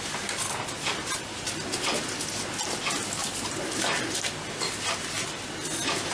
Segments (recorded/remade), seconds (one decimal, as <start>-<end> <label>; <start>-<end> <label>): 0.0-6.1 recorded